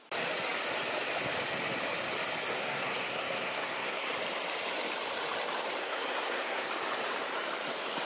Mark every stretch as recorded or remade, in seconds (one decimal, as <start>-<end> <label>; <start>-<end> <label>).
0.0-2.6 recorded; 2.6-4.1 remade; 4.1-5.8 recorded; 5.8-6.7 remade; 6.7-8.0 recorded